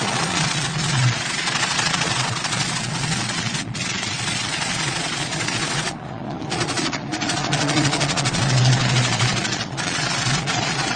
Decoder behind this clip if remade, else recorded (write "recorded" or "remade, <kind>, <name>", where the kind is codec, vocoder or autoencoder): remade, vocoder, Vocos